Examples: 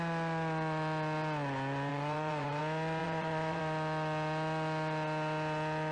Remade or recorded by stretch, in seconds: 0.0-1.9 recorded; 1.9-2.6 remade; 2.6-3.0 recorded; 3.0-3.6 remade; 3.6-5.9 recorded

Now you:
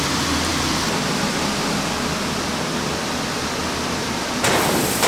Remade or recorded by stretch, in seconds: 0.0-5.1 recorded